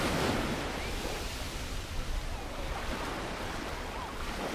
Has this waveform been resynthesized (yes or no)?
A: no